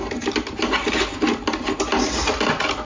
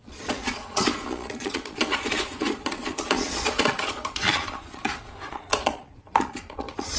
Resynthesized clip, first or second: second